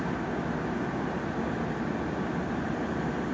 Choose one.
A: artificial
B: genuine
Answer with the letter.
B